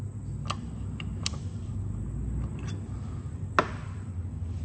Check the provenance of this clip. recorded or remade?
recorded